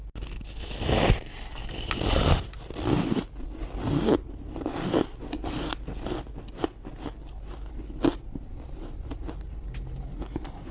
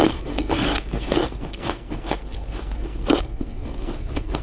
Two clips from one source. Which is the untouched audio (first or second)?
first